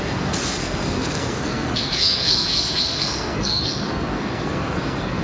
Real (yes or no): no